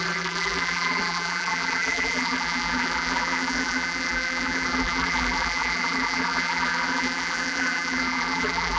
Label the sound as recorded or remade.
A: remade